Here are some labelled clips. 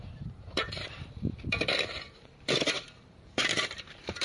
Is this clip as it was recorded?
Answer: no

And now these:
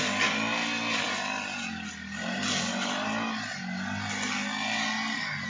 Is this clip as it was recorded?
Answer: yes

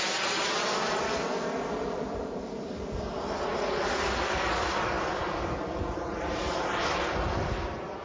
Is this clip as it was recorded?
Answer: yes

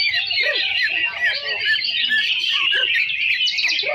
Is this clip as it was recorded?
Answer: yes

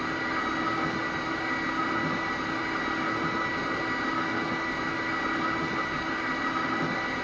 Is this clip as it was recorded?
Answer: yes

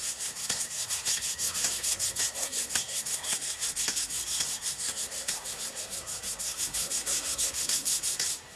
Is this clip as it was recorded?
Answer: no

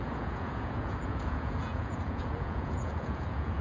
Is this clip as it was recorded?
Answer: no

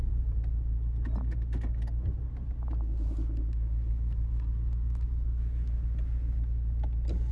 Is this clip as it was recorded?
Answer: yes